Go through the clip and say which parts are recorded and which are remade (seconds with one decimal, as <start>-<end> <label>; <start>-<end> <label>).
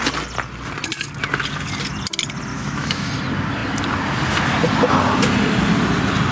0.0-2.5 recorded; 2.5-3.1 remade; 3.1-6.3 recorded